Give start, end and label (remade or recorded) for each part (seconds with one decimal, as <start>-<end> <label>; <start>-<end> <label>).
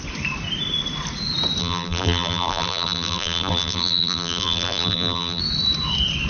0.0-1.6 recorded; 1.6-5.4 remade; 5.4-6.3 recorded